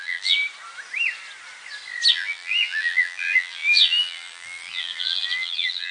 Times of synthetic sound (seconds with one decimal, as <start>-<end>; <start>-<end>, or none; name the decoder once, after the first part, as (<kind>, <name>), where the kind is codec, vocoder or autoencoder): 0.0-0.4 (vocoder, BigVGAN v2); 2.1-5.9